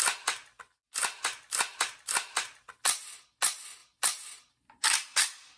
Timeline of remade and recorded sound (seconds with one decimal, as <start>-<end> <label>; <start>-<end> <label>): 0.0-1.0 recorded; 1.0-3.0 remade; 3.0-3.8 recorded; 3.8-4.7 remade; 4.7-5.6 recorded